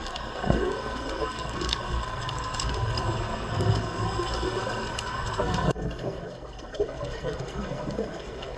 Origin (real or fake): fake